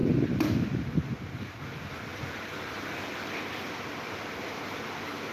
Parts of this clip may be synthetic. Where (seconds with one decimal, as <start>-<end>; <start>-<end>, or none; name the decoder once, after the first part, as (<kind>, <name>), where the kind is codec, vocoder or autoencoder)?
none